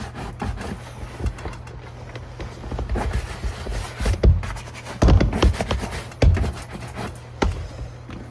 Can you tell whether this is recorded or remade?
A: recorded